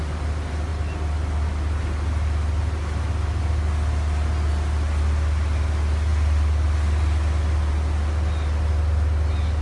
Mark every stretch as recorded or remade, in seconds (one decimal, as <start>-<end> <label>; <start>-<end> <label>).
0.0-9.6 recorded